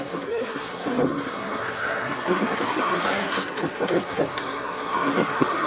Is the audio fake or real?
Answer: fake